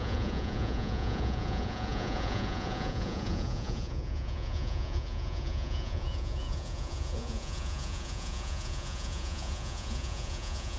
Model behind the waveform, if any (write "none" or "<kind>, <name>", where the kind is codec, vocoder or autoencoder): vocoder, Vocos